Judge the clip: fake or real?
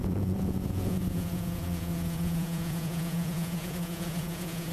fake